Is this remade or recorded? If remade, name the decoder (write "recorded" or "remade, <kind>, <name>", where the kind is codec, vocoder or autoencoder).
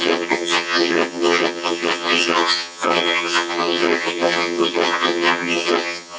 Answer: remade, vocoder, HiFi-GAN